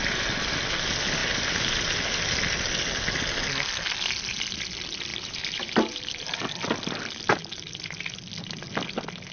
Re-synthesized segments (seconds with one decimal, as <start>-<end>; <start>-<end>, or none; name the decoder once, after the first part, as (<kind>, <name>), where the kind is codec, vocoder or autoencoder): 5.1-6.4 (vocoder, BigVGAN v2)